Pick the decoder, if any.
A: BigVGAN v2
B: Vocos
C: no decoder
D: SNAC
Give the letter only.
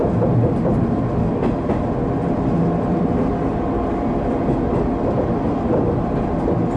C